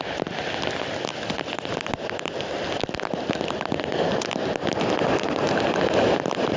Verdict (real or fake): real